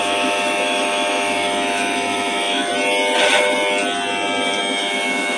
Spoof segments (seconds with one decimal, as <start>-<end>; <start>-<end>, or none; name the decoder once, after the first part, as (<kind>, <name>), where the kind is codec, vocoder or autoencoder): 0.0-2.7 (autoencoder, DAC-VAE); 4.6-5.4